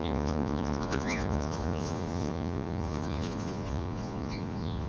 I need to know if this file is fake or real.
fake